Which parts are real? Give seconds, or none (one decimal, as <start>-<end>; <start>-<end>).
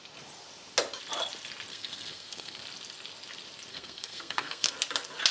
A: 0.0-1.7; 2.6-3.7; 4.7-5.3